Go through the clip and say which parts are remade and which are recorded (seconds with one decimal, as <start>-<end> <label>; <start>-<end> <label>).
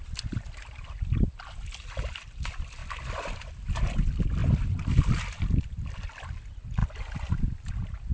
0.0-2.8 recorded; 2.8-3.8 remade; 3.8-4.4 recorded; 4.4-4.9 remade; 4.9-6.8 recorded; 6.8-8.1 remade